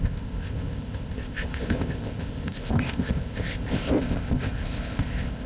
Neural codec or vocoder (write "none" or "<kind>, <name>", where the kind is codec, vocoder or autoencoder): codec, ZipCodec